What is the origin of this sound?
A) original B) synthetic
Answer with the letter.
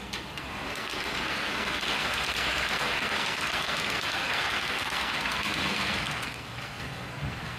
B